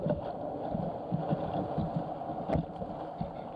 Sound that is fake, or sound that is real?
real